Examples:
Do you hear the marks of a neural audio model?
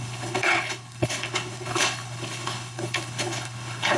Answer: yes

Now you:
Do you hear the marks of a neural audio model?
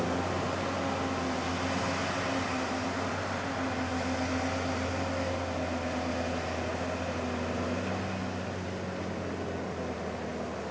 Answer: no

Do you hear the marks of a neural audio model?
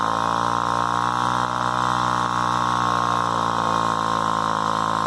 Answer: yes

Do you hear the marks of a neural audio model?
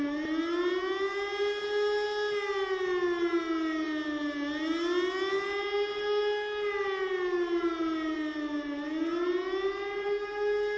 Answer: no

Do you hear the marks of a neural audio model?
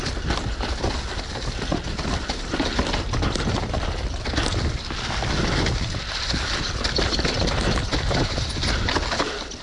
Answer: no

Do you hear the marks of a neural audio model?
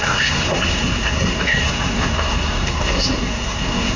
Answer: yes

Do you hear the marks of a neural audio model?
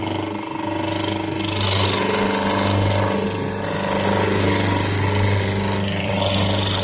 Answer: no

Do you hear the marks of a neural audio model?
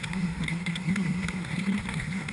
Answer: yes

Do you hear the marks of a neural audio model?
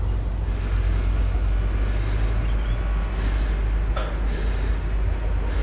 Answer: no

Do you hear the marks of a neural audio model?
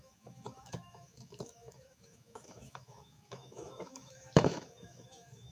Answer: yes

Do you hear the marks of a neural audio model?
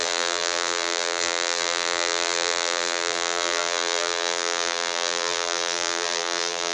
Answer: yes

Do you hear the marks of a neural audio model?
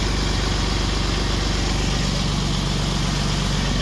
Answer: no